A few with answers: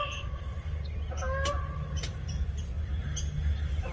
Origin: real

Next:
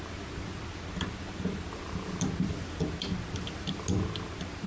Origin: real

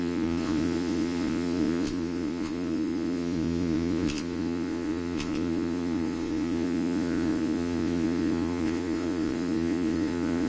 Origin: fake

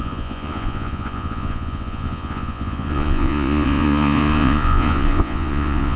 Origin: fake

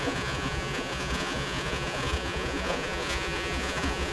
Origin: fake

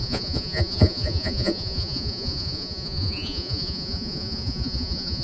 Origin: fake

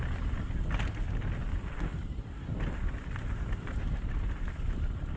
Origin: real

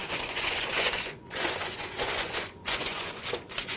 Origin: fake